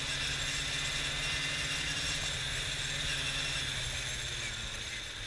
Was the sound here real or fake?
real